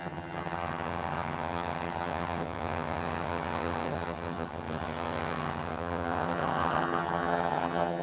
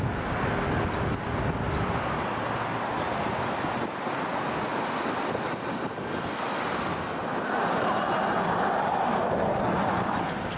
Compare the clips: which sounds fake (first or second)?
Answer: first